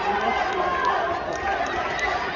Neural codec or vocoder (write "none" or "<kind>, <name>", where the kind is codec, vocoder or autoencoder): none